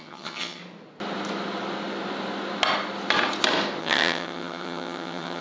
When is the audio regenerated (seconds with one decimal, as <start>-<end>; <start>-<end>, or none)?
0.0-0.6; 3.8-5.4